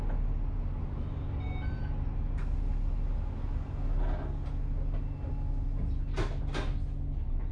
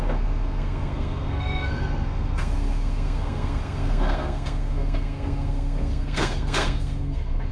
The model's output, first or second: second